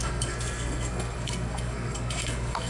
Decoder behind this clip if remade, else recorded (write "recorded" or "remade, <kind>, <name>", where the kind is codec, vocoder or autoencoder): remade, codec, SNAC